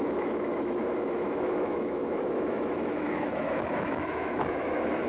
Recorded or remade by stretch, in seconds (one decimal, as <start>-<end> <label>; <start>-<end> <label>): 0.0-5.1 remade